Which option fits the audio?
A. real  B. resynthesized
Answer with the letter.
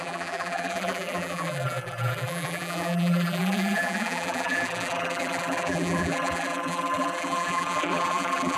B